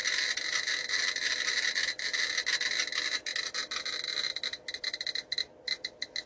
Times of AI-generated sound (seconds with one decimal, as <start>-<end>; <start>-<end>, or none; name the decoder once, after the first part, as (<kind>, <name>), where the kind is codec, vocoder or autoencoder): none